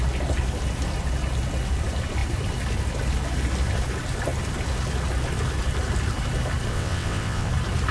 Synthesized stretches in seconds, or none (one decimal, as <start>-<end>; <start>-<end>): 6.7-7.5